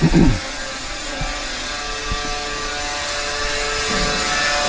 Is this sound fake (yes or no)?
no